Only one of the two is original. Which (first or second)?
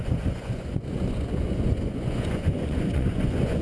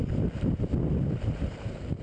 second